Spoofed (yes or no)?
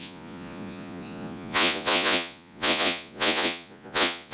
yes